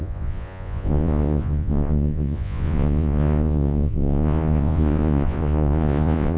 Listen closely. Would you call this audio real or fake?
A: fake